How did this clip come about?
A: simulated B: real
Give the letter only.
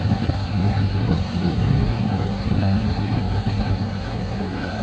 A